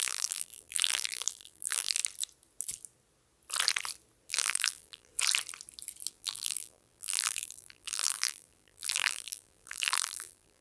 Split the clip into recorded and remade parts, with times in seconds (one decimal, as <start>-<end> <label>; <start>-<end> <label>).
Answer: 0.0-2.0 remade; 2.0-4.3 recorded; 4.3-5.1 remade; 5.1-6.1 recorded; 6.1-10.6 remade

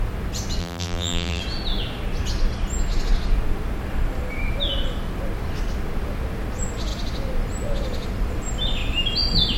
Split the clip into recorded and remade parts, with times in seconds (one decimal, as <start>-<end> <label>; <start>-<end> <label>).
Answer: 0.0-0.6 recorded; 0.6-1.4 remade; 1.4-9.6 recorded

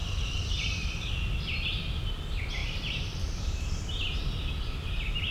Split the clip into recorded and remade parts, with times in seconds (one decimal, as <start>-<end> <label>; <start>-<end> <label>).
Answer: 0.0-1.1 remade; 1.1-2.6 recorded; 2.6-4.2 remade; 4.2-5.3 recorded

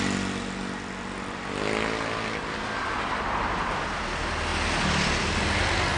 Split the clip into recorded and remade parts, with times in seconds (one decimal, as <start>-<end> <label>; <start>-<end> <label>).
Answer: 0.0-6.0 recorded

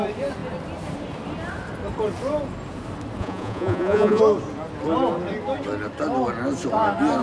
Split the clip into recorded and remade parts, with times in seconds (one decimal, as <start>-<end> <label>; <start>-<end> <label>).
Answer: 0.0-3.2 recorded; 3.2-4.2 remade; 4.2-7.2 recorded

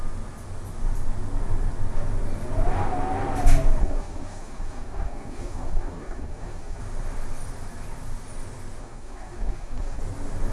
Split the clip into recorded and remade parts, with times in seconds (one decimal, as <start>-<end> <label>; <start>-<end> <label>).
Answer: 0.0-3.8 recorded; 3.8-6.8 remade; 6.8-8.8 recorded; 8.8-10.0 remade; 10.0-10.5 recorded

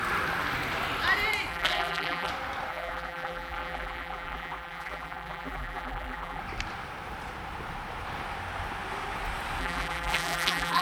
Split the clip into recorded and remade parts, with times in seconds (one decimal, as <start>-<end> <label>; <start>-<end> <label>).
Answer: 0.0-1.5 recorded; 1.5-2.3 remade; 2.3-2.7 recorded; 2.7-6.4 remade; 6.4-9.6 recorded; 9.6-10.8 remade

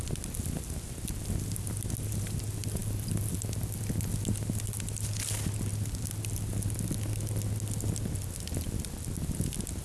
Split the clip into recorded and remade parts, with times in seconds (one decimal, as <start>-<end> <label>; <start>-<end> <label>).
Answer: 0.0-2.8 recorded; 2.8-4.1 remade; 4.1-9.8 recorded